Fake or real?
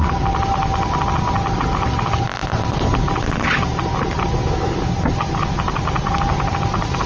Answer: real